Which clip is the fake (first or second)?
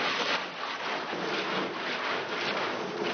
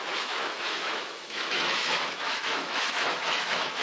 second